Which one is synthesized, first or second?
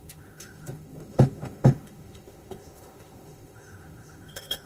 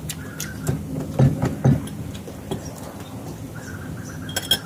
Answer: first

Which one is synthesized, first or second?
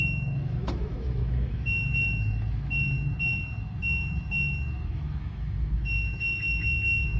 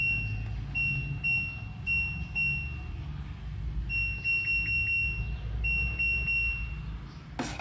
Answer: first